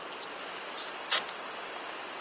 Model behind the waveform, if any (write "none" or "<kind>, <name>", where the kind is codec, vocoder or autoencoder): none